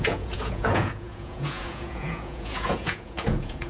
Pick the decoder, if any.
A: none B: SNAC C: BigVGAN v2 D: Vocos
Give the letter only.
D